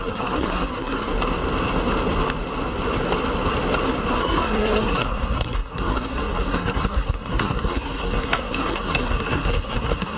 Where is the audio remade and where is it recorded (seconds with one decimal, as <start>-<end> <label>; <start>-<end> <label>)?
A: 0.0-1.1 remade; 1.1-4.1 recorded; 4.1-10.2 remade